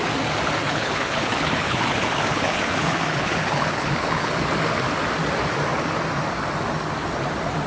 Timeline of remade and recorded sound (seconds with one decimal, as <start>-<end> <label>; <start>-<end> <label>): 0.0-0.6 recorded; 0.6-4.3 remade; 4.3-7.7 recorded